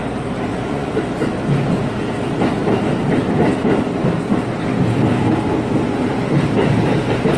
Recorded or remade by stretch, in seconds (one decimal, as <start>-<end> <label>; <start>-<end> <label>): 0.0-0.5 recorded; 0.5-1.0 remade; 1.0-7.4 recorded